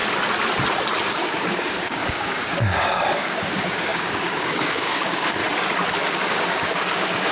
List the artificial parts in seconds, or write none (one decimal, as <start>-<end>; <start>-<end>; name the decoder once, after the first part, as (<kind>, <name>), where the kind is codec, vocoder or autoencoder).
1.1-5.4 (codec, DAC); 6.1-7.3